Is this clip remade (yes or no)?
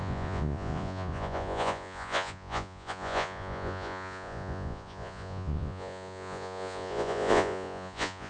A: yes